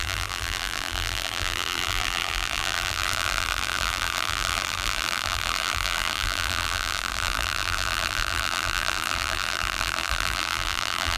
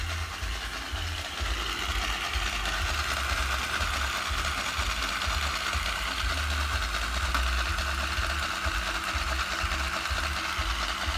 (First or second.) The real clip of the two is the second